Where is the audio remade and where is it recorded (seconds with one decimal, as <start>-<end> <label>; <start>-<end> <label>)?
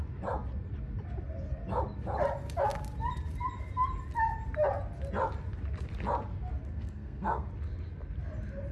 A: 0.0-6.7 recorded; 6.7-7.5 remade; 7.5-8.7 recorded